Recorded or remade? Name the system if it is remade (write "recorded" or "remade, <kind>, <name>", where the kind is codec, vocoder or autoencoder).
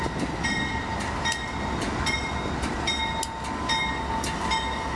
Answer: recorded